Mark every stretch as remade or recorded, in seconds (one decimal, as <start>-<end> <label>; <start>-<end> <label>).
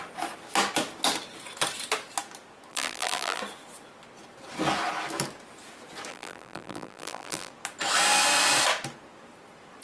0.0-2.7 recorded; 2.7-3.4 remade; 3.4-6.1 recorded; 6.1-7.5 remade; 7.5-9.8 recorded